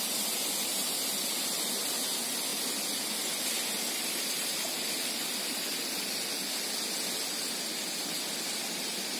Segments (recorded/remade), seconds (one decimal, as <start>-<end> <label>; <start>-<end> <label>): 0.0-9.2 recorded